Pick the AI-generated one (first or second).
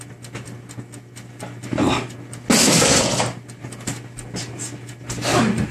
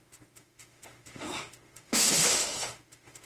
second